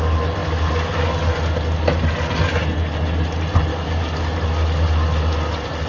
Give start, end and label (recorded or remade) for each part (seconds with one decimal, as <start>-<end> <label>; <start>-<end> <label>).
0.0-3.7 recorded; 3.7-4.2 remade; 4.2-5.9 recorded